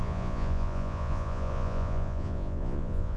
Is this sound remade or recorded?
remade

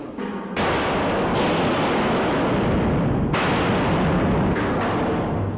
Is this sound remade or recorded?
recorded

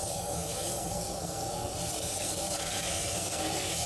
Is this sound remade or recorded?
remade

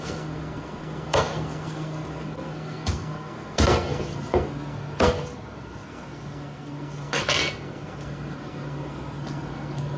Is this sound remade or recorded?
remade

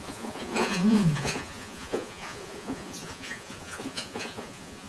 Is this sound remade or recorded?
remade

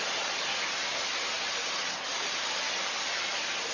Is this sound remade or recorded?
recorded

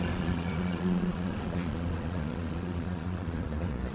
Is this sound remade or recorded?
remade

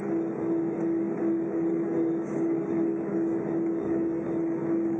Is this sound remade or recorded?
remade